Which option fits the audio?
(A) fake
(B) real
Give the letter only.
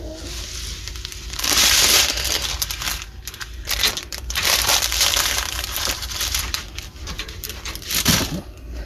A